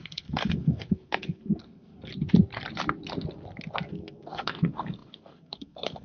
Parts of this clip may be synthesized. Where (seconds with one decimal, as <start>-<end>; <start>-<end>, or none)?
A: 0.0-2.1; 3.8-6.0